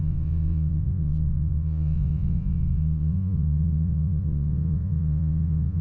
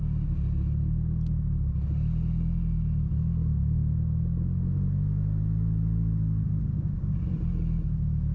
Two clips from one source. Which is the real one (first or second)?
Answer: second